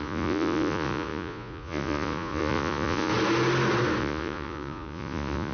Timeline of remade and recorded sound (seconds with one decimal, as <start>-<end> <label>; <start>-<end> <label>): 0.0-3.1 remade; 3.1-4.0 recorded; 4.0-5.5 remade